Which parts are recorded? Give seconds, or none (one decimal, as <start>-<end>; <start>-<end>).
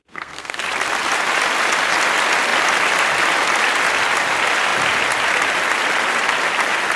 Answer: 0.6-7.0